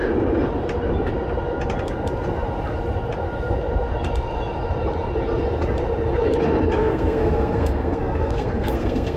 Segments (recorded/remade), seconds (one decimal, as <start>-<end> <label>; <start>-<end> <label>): 0.0-6.8 recorded; 6.8-9.2 remade